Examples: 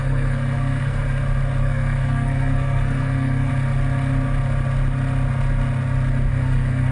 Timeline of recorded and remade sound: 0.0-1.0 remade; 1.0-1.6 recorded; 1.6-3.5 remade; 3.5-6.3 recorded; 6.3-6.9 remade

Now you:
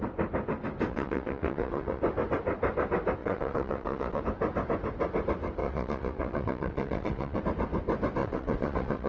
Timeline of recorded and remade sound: 0.0-0.9 recorded; 0.9-2.0 remade; 2.0-3.2 recorded; 3.2-4.2 remade; 4.2-5.6 recorded; 5.6-7.4 remade; 7.4-8.2 recorded; 8.2-9.1 remade

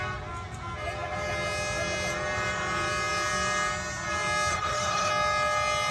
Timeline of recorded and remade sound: 0.0-4.5 recorded; 4.5-5.1 remade; 5.1-5.9 recorded

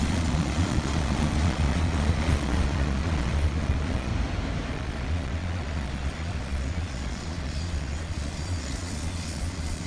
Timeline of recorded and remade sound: 0.0-4.1 remade; 4.1-4.7 recorded; 4.7-9.9 remade

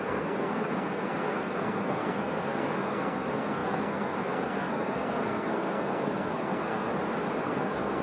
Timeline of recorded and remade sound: 0.0-6.9 remade; 6.9-7.4 recorded; 7.4-8.0 remade